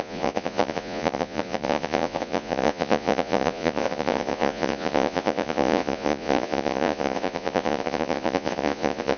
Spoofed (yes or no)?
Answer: yes